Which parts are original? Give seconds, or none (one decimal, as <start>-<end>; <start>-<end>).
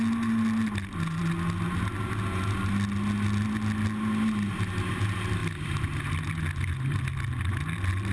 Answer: 0.0-8.1